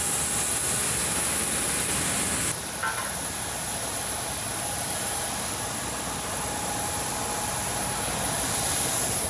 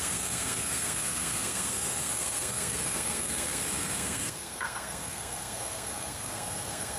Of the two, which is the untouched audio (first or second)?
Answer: first